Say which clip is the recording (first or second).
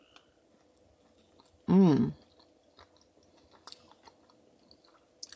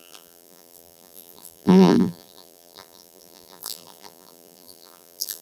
first